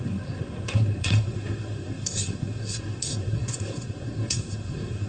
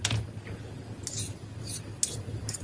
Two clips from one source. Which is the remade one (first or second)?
first